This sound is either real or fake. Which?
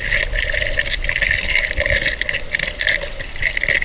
real